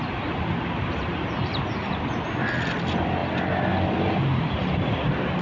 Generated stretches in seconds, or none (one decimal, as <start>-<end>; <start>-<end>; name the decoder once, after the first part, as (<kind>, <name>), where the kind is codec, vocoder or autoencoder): none